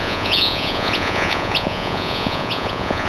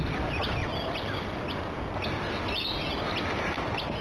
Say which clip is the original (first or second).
second